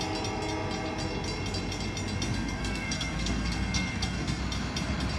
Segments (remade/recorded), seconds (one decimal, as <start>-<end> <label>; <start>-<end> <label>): 0.0-2.4 recorded; 2.4-4.4 remade; 4.4-5.2 recorded